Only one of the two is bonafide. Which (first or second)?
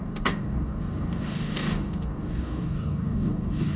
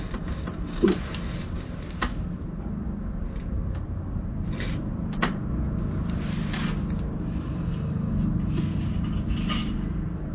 second